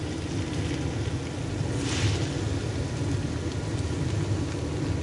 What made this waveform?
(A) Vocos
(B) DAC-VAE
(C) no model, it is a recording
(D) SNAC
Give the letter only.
C